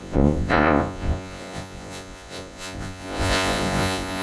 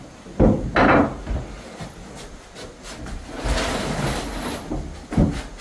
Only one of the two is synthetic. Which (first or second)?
first